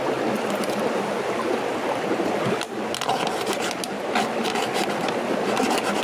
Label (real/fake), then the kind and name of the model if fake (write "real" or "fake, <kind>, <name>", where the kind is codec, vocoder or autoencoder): real